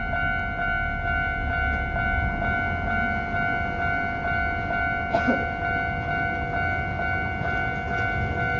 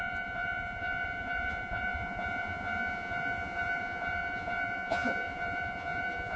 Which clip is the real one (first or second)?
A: first